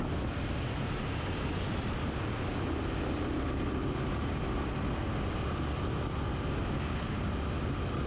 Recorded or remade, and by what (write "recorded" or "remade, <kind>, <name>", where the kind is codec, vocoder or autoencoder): recorded